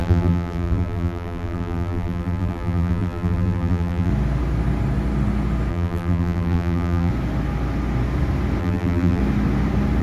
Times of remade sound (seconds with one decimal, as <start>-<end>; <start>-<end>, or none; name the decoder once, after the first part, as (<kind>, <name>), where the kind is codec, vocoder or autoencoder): 0.0-4.1 (vocoder, BigVGAN v2); 5.7-7.1; 8.6-9.2